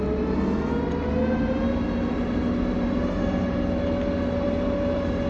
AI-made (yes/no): no